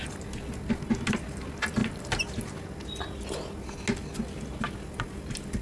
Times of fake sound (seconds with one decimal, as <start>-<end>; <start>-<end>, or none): none